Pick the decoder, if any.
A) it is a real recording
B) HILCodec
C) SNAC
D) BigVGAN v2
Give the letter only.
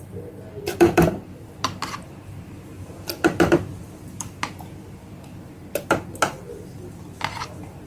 D